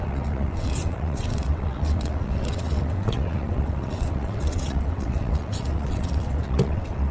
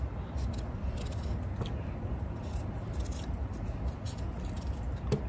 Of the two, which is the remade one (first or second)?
first